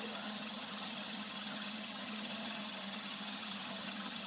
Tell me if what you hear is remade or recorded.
remade